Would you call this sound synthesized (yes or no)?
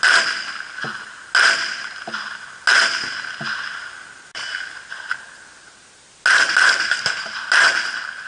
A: no